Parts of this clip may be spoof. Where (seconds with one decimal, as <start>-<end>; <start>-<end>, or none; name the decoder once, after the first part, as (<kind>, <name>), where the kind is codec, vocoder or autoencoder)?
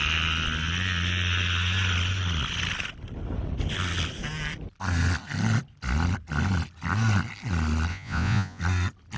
7.9-8.6 (vocoder, Vocos)